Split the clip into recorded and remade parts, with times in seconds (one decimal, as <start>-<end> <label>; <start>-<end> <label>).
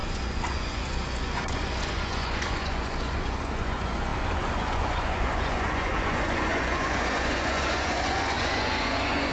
0.0-9.3 remade